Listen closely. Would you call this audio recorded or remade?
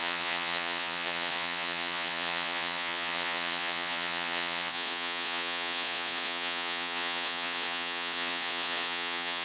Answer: remade